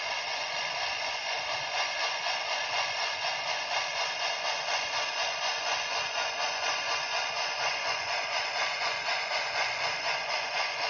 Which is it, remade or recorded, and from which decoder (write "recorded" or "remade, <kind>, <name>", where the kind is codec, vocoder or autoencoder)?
remade, vocoder, Vocos